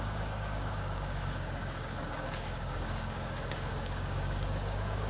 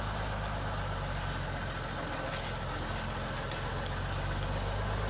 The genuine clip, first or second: second